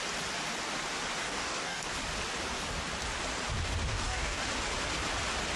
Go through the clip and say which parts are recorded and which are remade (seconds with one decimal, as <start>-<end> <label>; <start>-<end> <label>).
0.0-1.2 recorded; 1.2-1.8 remade; 1.8-3.9 recorded; 3.9-4.4 remade; 4.4-5.6 recorded